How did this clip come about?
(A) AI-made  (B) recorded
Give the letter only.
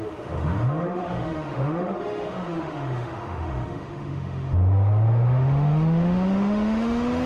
A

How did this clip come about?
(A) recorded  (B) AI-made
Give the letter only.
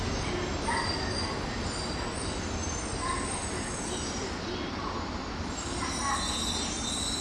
A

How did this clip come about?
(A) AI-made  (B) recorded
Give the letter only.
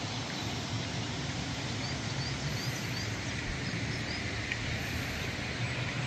B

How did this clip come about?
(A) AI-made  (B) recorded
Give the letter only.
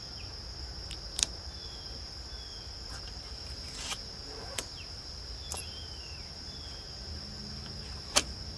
B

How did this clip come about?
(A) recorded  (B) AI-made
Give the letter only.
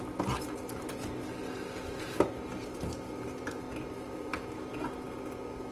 A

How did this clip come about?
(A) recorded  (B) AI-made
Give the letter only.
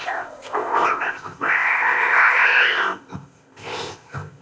B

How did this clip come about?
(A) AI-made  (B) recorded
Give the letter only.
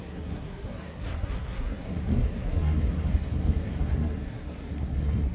A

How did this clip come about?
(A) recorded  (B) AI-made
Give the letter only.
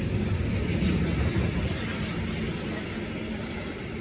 A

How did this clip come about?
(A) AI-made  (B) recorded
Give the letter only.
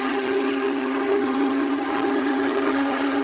A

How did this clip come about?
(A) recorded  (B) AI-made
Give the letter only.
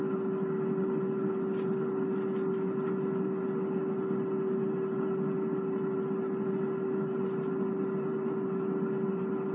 A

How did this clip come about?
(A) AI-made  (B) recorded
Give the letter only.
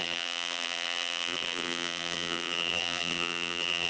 A